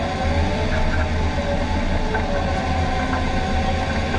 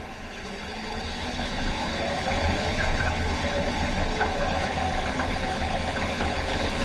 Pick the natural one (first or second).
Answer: first